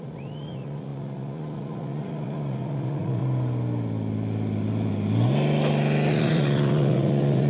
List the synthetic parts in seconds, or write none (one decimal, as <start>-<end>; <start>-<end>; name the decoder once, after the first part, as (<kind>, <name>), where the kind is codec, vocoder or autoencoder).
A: 0.0-3.2 (vocoder, Vocos); 6.1-7.5